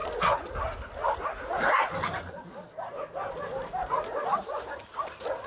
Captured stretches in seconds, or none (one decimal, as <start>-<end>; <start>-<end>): 0.0-5.5